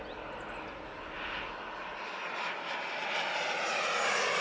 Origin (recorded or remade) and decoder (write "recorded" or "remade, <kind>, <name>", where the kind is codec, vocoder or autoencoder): recorded